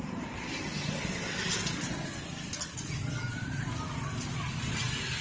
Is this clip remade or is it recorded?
recorded